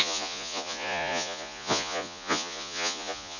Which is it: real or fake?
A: fake